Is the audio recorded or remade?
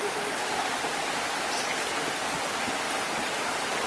recorded